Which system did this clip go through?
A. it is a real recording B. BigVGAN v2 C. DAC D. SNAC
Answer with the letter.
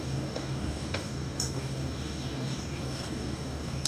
C